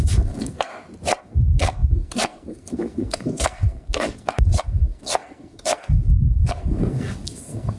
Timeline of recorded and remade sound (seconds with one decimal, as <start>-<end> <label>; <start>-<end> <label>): 0.0-0.7 remade; 0.7-1.2 recorded; 1.2-7.8 remade